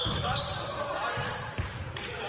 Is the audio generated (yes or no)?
yes